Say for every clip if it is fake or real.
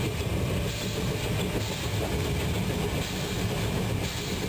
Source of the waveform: real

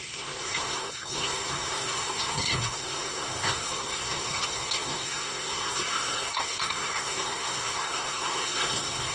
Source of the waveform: fake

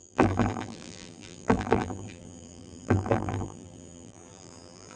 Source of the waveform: fake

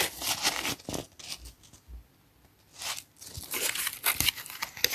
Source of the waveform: real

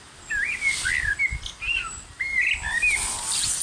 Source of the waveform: real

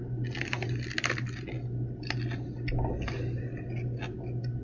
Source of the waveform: real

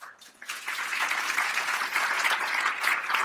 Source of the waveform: fake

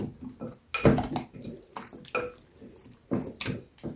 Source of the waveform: real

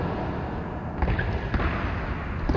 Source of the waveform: real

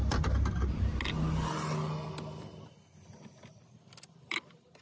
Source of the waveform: real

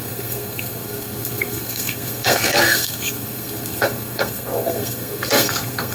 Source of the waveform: fake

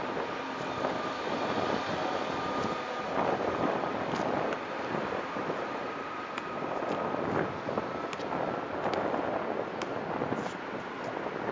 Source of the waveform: real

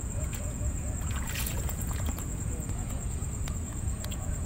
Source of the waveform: fake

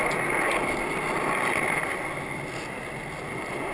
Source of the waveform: real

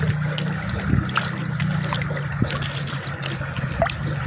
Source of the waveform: real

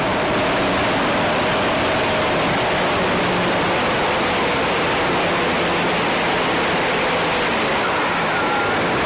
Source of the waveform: real